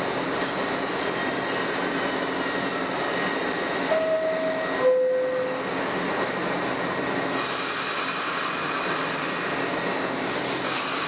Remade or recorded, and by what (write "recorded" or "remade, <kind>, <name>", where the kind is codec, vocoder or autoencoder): recorded